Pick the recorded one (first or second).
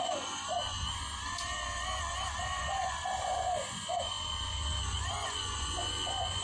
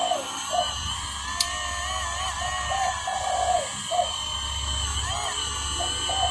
second